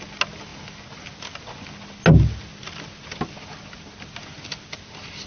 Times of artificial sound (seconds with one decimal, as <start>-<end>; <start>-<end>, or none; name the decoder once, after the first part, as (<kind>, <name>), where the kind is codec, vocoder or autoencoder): none

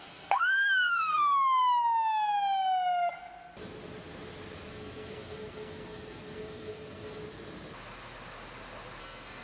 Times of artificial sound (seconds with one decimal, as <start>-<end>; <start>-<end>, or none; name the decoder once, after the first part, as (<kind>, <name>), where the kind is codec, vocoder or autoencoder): 0.0-1.6 (codec, SNAC); 4.7-7.2; 9.0-9.4

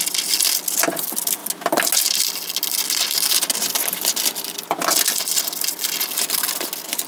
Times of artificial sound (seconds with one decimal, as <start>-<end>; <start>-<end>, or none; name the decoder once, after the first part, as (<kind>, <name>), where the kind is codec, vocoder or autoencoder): none